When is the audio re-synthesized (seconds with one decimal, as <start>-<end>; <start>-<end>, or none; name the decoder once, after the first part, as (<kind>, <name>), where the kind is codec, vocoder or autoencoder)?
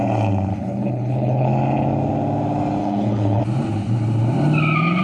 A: 0.5-1.5 (codec, HILCodec); 2.8-3.4